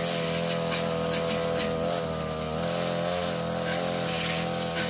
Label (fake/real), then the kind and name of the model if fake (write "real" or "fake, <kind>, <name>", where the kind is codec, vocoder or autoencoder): real